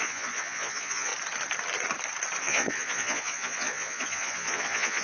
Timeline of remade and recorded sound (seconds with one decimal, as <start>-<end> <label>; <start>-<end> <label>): 0.0-1.1 remade; 1.1-2.4 recorded; 2.4-5.0 remade